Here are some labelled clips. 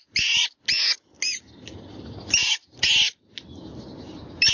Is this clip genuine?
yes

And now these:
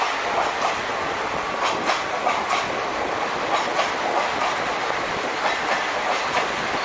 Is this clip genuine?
yes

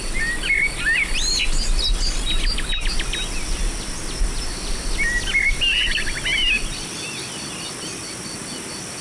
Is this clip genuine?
yes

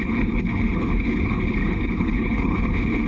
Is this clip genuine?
no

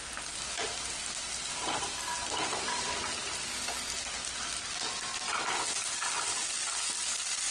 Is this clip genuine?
yes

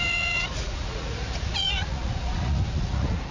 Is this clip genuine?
no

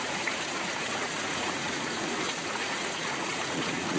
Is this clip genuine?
no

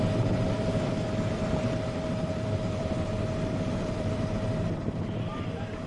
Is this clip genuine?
no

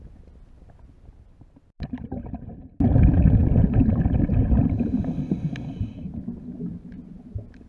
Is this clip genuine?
yes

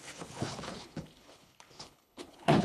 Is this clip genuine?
no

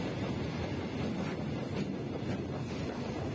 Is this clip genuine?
yes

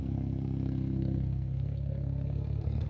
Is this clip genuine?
no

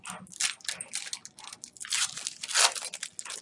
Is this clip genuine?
yes